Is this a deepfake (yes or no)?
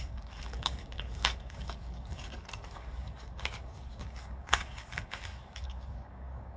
yes